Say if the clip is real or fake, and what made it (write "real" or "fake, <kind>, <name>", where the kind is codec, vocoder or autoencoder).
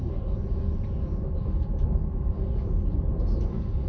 real